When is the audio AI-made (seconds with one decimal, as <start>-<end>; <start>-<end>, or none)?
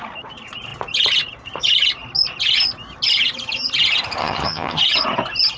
4.2-4.8